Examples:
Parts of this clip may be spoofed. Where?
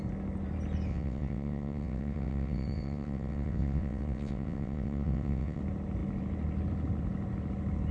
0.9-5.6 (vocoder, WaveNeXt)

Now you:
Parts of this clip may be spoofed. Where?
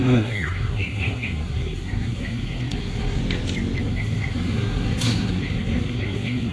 0.0-3.2 (codec, SNAC); 3.8-6.5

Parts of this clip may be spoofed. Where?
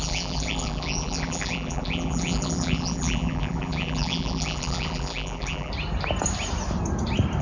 0.0-5.7 (vocoder, BigVGAN v2)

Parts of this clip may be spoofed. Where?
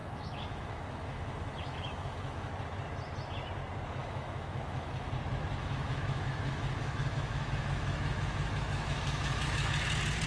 0.0-2.5 (autoencoder, DAC-VAE); 4.0-5.1; 5.6-9.7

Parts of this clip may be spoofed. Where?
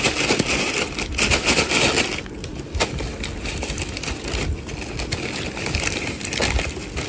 none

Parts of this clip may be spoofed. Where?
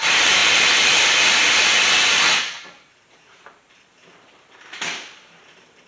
0.0-5.9 (vocoder, BigVGAN v2)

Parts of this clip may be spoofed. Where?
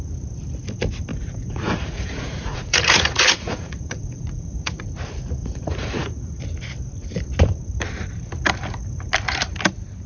1.1-4.8 (vocoder, Vocos); 5.4-6.4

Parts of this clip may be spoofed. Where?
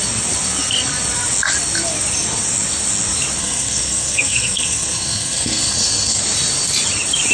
3.4-6.2 (codec, SNAC)